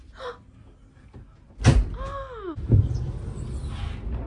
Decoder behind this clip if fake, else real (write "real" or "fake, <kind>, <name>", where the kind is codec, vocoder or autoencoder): real